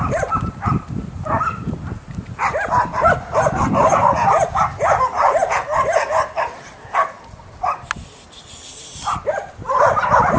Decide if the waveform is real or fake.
real